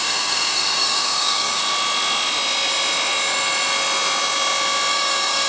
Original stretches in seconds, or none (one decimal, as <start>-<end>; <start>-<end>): 1.6-4.9